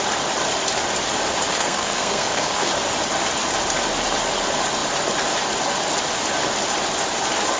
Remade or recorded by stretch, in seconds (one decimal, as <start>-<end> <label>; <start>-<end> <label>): 0.0-1.5 recorded; 1.5-2.7 remade; 2.7-7.6 recorded